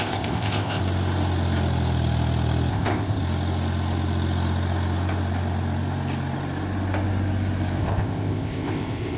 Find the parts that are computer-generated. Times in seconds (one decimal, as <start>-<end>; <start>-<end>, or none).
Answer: 0.0-0.8; 2.7-3.2; 7.8-9.2